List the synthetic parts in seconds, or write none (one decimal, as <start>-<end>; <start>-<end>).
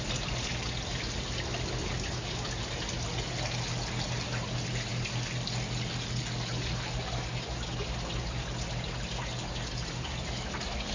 none